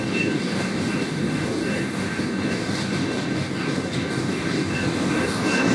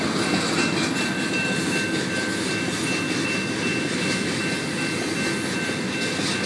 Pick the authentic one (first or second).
second